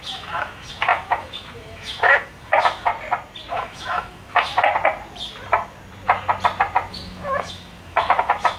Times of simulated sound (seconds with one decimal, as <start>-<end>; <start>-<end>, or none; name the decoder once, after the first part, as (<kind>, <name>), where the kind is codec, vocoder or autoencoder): 0.0-2.9 (autoencoder, DAC-VAE); 3.5-4.5; 6.9-8.6